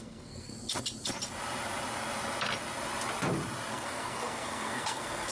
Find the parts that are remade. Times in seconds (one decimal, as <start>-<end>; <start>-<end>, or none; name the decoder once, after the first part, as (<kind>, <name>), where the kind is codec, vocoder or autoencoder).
0.0-0.5 (codec, SNAC); 3.7-5.3